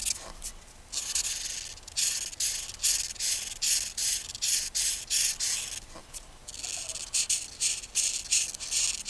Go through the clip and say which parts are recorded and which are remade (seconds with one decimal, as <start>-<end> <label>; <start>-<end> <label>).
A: 0.0-9.1 recorded